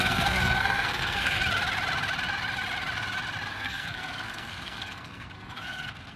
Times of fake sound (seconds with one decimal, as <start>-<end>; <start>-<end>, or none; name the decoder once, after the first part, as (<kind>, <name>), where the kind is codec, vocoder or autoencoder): 0.0-1.4 (codec, SNAC); 3.5-6.2